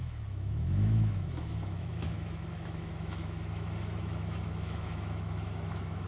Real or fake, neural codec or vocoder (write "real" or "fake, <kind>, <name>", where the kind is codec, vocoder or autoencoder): fake, autoencoder, DAC-VAE